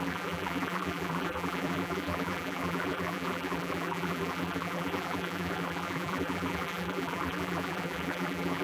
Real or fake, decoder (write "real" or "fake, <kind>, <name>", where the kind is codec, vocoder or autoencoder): fake, vocoder, BigVGAN v2